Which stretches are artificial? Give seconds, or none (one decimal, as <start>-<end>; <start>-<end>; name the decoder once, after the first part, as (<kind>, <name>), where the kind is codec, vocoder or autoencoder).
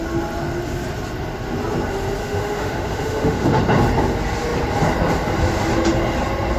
2.2-3.6 (autoencoder, DAC-VAE)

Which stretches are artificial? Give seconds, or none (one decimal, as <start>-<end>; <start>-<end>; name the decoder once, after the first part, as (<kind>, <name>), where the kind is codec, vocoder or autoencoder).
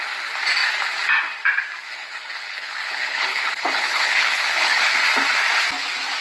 1.9-4.9 (codec, HILCodec)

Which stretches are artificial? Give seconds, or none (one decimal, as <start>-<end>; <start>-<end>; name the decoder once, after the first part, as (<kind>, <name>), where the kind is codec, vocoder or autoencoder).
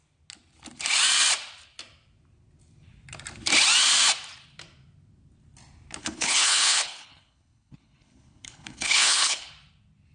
6.0-9.5 (codec, HILCodec)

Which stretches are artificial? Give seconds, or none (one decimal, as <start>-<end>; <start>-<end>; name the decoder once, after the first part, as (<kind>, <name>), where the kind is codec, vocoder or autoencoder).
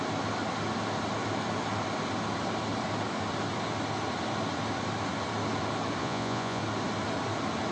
6.0-6.6 (vocoder, Vocos)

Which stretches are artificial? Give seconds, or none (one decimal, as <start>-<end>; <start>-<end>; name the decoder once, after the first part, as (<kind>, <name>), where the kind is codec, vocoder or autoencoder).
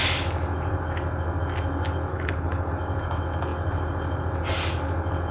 2.1-2.7 (codec, HILCodec)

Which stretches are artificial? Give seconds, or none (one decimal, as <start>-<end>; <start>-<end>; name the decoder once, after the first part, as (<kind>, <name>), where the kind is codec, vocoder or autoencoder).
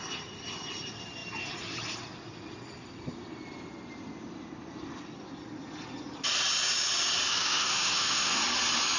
7.3-8.4 (autoencoder, DAC-VAE)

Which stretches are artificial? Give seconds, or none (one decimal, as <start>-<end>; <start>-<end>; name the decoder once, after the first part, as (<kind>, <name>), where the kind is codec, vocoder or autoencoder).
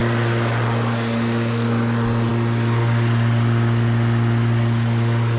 none